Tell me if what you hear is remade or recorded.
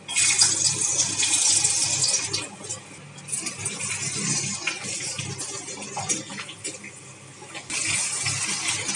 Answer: recorded